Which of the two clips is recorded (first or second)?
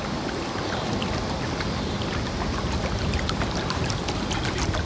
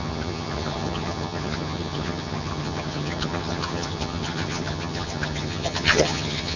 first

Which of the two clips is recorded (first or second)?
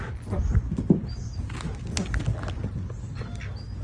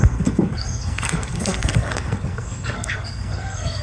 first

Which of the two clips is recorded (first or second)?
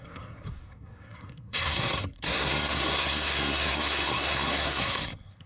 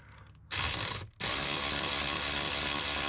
second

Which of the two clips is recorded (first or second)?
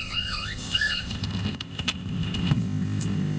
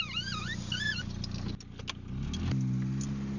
second